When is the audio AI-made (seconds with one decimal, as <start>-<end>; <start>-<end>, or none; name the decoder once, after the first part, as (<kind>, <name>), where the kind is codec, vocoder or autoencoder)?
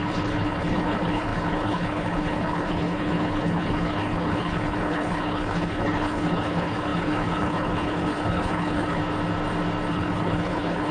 0.0-9.0 (codec, HILCodec); 9.9-10.9